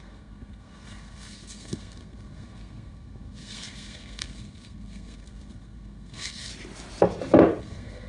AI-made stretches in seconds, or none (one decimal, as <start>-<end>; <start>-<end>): 0.0-6.5; 7.6-8.1